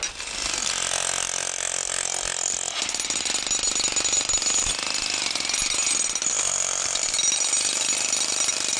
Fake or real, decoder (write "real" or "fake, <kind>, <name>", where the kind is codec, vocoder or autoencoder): real